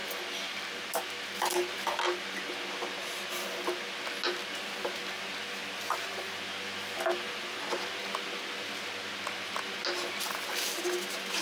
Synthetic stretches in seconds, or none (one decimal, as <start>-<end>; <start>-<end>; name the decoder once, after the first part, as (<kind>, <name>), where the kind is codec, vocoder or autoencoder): none